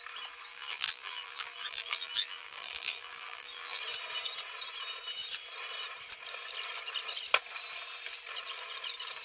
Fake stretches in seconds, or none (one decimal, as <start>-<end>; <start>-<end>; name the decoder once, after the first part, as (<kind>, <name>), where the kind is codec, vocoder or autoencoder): 0.5-3.8 (vocoder, BigVGAN v2)